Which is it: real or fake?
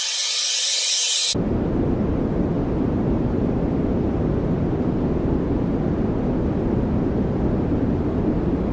real